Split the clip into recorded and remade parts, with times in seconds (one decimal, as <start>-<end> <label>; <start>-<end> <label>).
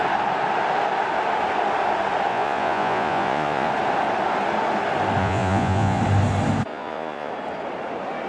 0.0-2.3 recorded; 2.3-3.7 remade; 3.7-5.2 recorded; 5.2-6.0 remade; 6.0-6.7 recorded; 6.7-7.3 remade; 7.3-8.3 recorded